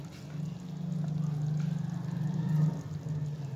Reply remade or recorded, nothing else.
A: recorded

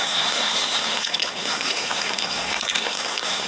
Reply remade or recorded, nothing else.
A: remade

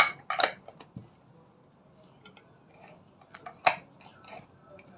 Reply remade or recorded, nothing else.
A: recorded